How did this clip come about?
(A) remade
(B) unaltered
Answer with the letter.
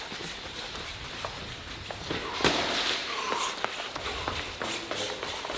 B